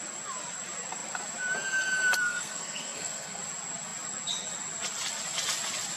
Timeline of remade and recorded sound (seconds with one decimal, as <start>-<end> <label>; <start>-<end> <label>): 0.0-2.2 recorded; 2.2-3.4 remade; 3.4-6.0 recorded